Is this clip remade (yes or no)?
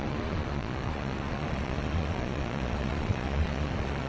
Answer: yes